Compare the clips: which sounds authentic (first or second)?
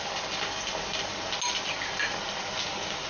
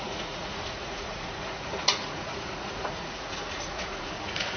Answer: first